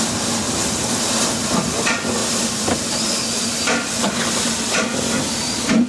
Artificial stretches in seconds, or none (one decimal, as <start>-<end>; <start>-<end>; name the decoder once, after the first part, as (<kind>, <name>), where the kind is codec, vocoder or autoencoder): 2.2-5.9 (vocoder, BigVGAN v2)